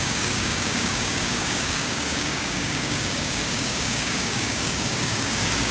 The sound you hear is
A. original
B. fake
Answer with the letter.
B